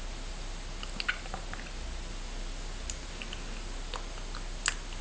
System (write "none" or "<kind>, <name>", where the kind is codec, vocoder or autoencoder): none